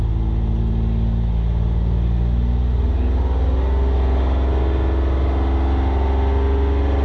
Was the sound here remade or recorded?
recorded